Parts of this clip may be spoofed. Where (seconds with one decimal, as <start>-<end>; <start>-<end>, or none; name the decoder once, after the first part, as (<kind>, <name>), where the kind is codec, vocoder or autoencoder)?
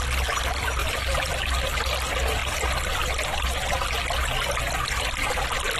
none